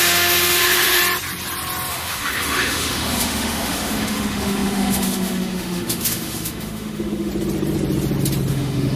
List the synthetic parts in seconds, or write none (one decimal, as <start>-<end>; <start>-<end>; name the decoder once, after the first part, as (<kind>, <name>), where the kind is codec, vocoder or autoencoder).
0.0-1.0 (autoencoder, DAC-VAE); 1.9-7.3; 8.5-9.0